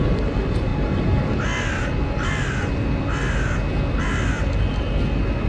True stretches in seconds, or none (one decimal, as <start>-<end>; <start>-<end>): 0.0-5.5

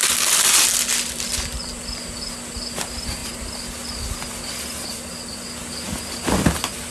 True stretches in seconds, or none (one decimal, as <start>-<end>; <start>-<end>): 0.0-6.9

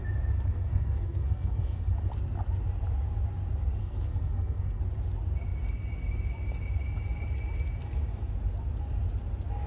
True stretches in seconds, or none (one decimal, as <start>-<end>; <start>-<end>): 0.0-0.5; 1.9-3.8; 4.8-9.7

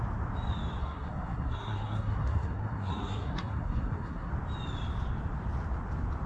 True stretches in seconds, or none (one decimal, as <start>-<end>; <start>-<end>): 0.0-0.8; 4.3-6.3

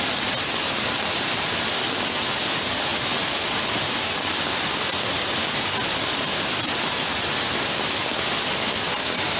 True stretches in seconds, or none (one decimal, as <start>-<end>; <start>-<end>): 0.0-9.4

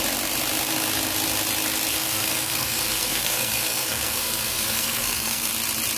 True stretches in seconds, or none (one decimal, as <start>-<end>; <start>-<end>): 0.0-1.9; 5.5-6.0

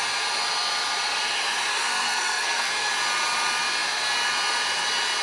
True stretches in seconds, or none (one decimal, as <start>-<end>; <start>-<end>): 0.0-1.7; 2.9-5.2